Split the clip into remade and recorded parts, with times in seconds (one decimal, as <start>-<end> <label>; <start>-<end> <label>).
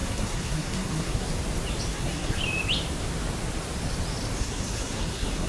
0.0-1.3 remade; 1.3-1.9 recorded; 1.9-2.4 remade; 2.4-4.4 recorded; 4.4-5.5 remade